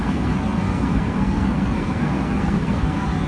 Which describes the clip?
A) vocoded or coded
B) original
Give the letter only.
A